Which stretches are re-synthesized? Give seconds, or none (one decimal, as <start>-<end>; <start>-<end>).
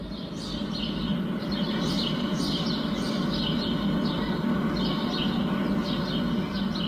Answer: none